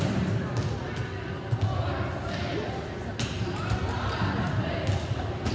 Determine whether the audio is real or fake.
real